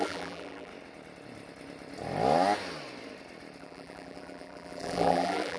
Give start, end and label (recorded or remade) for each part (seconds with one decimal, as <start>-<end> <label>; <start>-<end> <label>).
0.0-0.7 remade; 0.7-3.6 recorded; 3.6-5.6 remade